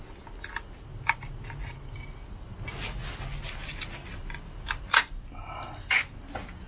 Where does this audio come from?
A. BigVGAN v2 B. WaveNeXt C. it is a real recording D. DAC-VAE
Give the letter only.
C